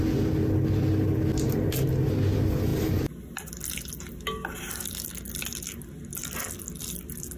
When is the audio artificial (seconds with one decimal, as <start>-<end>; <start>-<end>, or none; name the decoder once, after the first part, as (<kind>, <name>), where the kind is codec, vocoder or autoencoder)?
none